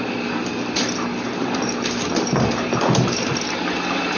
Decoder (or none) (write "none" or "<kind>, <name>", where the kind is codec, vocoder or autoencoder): none